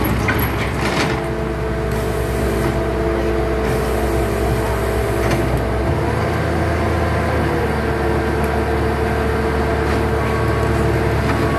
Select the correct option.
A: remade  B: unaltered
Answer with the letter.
B